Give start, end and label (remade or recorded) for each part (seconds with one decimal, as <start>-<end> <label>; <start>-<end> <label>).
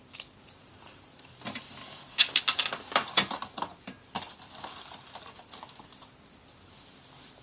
0.0-1.8 recorded; 1.8-2.4 remade; 2.4-7.4 recorded